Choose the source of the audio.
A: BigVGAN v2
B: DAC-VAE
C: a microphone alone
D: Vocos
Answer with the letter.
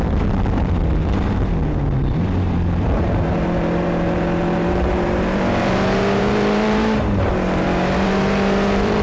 A